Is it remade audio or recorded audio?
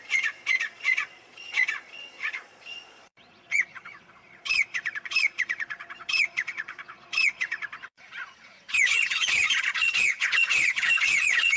remade